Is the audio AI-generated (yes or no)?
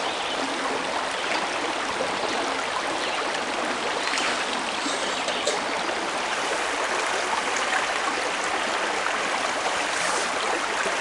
no